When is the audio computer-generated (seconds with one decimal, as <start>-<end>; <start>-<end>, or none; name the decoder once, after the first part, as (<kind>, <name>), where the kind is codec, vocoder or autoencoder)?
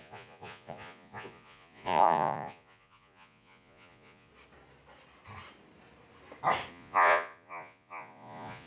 0.0-4.3 (vocoder, Vocos); 6.7-8.7